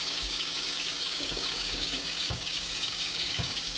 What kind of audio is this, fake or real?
fake